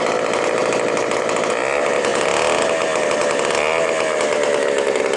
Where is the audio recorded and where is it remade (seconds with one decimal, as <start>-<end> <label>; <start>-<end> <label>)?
0.0-5.2 recorded